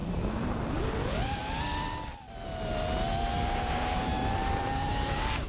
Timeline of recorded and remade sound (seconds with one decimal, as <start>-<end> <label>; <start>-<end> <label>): 0.0-3.3 recorded; 3.3-4.1 remade; 4.1-4.7 recorded; 4.7-5.5 remade